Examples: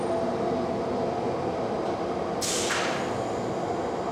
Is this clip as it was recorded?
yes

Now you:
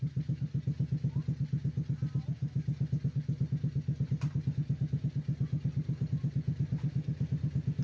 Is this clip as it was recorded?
yes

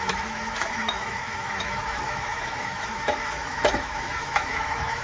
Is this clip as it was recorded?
no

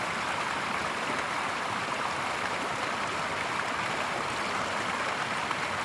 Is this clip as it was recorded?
yes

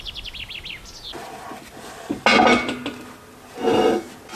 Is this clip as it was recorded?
yes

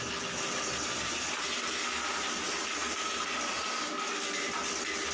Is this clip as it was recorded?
yes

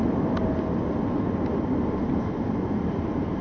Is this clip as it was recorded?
yes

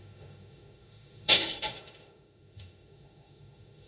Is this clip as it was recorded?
no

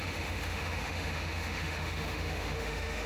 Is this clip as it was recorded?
no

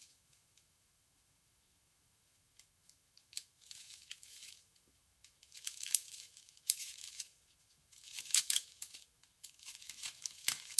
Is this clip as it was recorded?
no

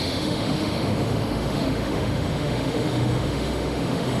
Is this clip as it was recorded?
no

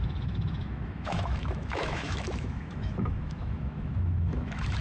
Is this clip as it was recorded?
no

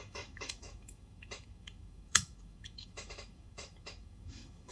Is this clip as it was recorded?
no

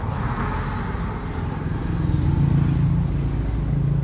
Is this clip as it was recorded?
yes